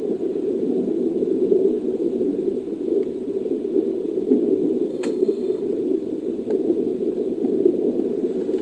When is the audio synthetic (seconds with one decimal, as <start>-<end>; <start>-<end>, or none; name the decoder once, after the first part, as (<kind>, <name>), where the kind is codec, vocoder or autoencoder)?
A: 4.9-5.6 (codec, SNAC)